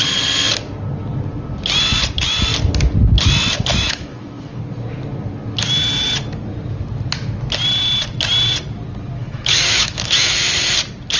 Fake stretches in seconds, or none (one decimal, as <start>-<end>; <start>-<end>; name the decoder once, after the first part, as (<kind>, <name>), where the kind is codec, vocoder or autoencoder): 3.7-4.6 (autoencoder, DAC-VAE); 9.2-10.3